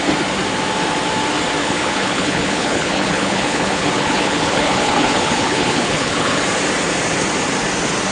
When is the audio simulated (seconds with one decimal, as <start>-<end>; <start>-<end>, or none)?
1.6-6.4

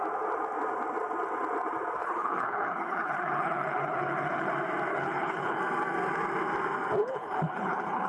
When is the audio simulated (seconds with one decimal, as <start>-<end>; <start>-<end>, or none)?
2.0-4.5; 4.9-5.6; 7.0-8.1

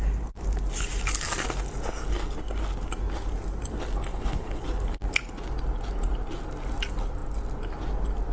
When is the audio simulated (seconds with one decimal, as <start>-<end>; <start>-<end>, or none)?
4.1-4.6